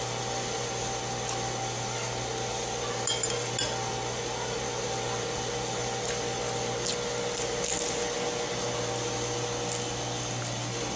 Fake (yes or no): no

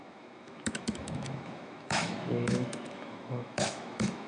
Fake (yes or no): yes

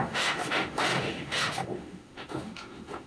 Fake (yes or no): yes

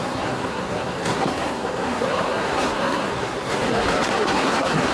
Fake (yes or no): yes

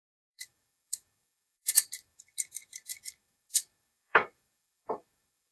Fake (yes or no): yes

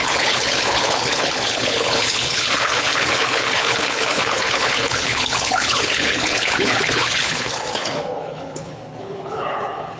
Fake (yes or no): yes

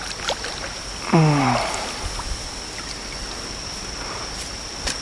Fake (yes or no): no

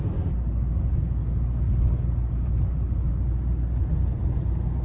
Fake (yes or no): no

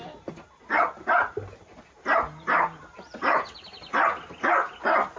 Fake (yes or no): no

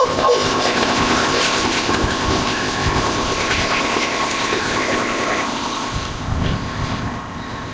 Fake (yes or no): yes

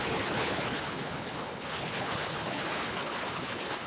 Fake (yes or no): yes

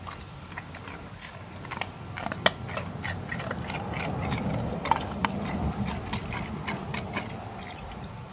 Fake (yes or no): no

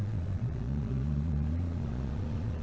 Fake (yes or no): yes